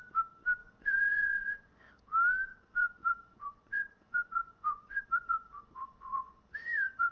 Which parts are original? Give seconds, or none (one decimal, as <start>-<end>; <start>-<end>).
0.0-0.6; 1.9-2.5